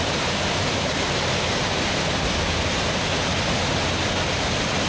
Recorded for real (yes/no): yes